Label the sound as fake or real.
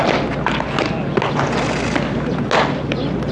real